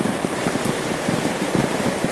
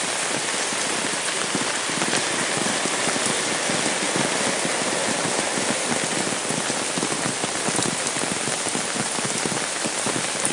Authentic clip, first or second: second